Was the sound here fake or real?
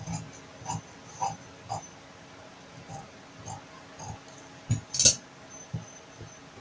real